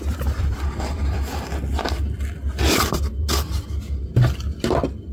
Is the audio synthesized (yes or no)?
no